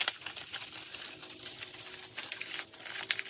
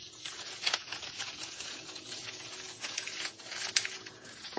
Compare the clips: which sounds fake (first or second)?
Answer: second